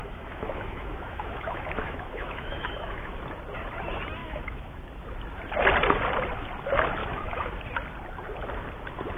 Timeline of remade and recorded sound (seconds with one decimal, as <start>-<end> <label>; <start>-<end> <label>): 0.0-3.1 remade; 3.1-4.2 recorded; 4.2-4.8 remade; 4.8-7.0 recorded; 7.0-7.5 remade; 7.5-9.2 recorded